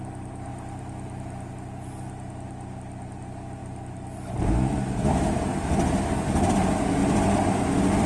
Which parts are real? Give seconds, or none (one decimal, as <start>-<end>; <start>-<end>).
0.0-3.6; 5.1-7.0